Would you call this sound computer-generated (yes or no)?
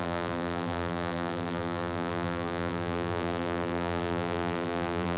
yes